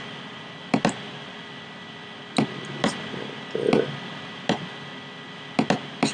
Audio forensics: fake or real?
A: real